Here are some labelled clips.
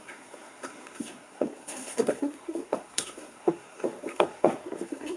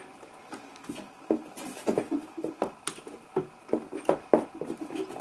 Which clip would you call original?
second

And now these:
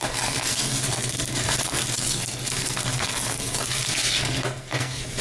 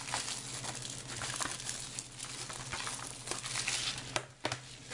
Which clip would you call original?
second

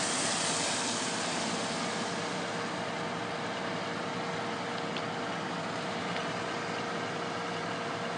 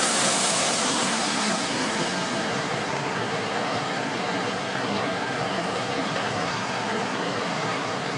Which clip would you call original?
first